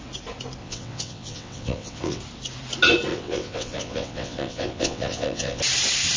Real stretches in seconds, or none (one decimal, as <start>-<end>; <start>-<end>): 0.0-0.6; 2.2-3.1; 5.6-6.2